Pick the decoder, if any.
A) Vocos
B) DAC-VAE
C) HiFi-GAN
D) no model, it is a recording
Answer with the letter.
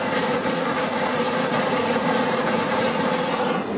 A